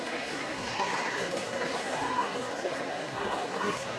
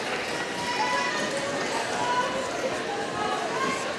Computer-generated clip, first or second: first